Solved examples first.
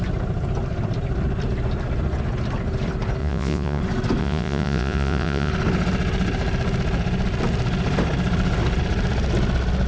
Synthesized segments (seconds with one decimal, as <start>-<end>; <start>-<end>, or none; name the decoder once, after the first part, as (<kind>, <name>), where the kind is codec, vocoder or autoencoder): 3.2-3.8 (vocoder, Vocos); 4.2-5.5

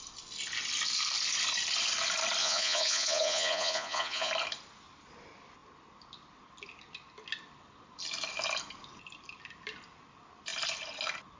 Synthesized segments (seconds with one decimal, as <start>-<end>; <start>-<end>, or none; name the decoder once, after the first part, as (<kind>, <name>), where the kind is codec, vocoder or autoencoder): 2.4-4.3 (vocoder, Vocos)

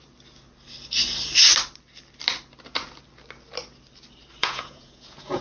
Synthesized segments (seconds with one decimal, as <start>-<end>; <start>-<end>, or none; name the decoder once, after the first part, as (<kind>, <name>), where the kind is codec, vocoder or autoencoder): 4.4-5.4 (vocoder, Vocos)

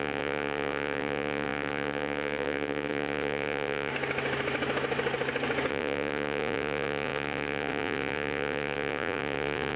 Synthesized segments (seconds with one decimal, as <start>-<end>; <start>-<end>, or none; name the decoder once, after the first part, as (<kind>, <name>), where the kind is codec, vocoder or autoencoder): 0.0-3.9 (vocoder, Vocos); 5.7-9.8

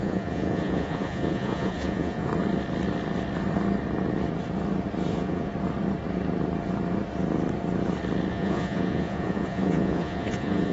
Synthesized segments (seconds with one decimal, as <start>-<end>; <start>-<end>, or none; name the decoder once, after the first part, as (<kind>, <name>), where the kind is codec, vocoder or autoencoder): 0.0-2.3 (vocoder, Vocos); 5.1-5.5; 8.3-10.7